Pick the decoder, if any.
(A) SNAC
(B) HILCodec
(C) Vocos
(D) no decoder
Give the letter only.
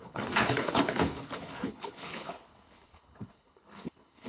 B